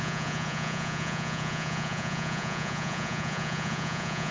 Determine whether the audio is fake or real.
fake